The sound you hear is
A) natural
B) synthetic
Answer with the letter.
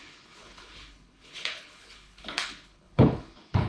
B